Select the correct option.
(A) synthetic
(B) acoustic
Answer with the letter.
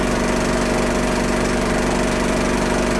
B